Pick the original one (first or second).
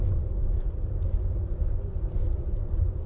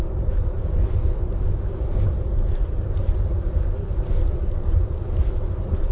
first